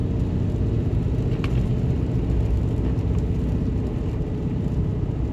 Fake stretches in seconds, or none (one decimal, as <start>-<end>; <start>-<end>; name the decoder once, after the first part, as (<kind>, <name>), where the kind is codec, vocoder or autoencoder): none

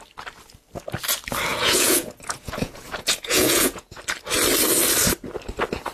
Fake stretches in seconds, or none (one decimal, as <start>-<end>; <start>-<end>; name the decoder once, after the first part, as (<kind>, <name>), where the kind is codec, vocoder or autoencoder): 1.5-4.0 (vocoder, Vocos)